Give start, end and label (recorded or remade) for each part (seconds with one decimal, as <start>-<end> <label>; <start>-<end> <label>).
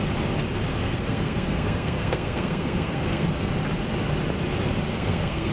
0.0-0.7 recorded; 0.7-3.5 remade; 3.5-4.9 recorded; 4.9-5.5 remade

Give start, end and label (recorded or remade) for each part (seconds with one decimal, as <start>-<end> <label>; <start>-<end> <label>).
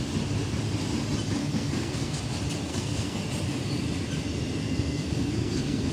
0.0-1.4 recorded; 1.4-2.2 remade; 2.2-2.7 recorded; 2.7-3.2 remade; 3.2-4.6 recorded; 4.6-5.9 remade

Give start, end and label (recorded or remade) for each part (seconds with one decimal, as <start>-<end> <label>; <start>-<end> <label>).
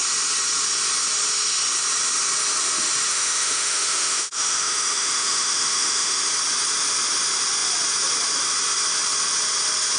0.0-3.1 recorded; 3.1-6.3 remade; 6.3-10.0 recorded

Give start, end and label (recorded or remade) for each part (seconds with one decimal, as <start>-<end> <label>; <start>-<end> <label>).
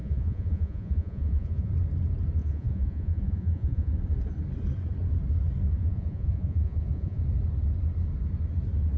0.0-1.7 remade; 1.7-2.4 recorded; 2.4-3.9 remade; 3.9-5.8 recorded; 5.8-7.2 remade; 7.2-9.0 recorded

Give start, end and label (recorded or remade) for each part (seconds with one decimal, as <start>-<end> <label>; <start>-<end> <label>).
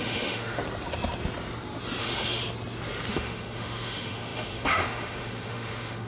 0.0-0.6 remade; 0.6-2.0 recorded; 2.0-2.4 remade; 2.4-3.1 recorded; 3.1-6.1 remade